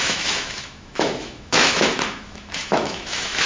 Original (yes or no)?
no